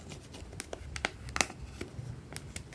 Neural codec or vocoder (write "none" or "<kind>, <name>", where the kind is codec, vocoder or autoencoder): none